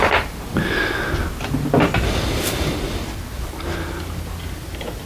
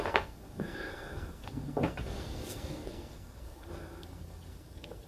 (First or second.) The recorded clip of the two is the first